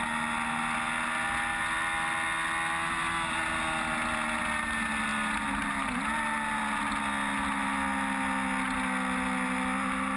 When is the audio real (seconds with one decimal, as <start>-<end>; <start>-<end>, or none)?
0.0-10.2